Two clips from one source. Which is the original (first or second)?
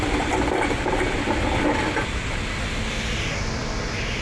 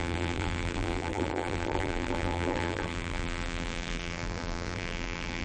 first